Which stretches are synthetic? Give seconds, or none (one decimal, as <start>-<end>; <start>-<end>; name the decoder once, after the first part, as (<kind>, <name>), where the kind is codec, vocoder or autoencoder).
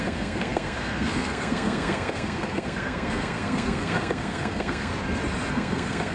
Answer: 0.0-4.9 (codec, SNAC); 5.5-6.1